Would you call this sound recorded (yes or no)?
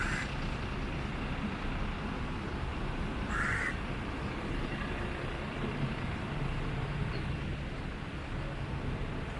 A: yes